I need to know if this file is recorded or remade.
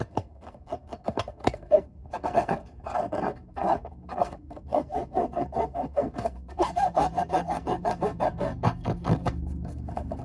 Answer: remade